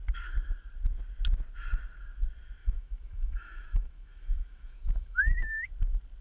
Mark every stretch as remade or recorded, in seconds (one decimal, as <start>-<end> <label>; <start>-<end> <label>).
0.0-2.6 recorded; 2.6-5.7 remade; 5.7-6.2 recorded